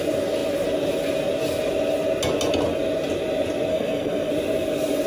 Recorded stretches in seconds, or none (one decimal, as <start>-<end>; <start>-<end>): 0.0-3.7; 4.3-5.1

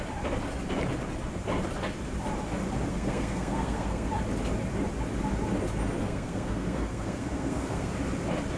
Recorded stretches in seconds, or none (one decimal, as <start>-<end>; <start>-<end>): 0.0-2.9; 4.1-6.0; 7.9-8.6

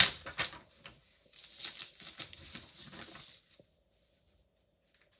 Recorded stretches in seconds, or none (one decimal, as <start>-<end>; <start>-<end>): 0.0-5.2

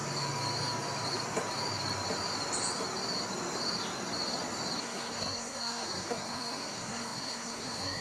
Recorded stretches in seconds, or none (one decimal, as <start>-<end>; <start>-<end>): 0.0-4.8